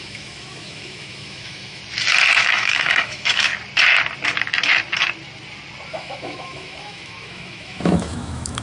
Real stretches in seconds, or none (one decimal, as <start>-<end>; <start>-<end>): 1.8-2.3; 3.5-5.9